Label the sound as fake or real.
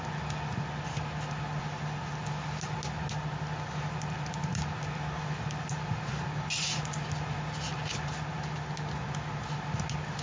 real